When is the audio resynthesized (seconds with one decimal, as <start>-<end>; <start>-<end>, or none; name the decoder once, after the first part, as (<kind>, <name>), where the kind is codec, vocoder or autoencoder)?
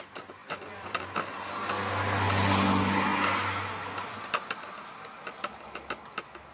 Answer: 0.4-1.0 (vocoder, BigVGAN v2)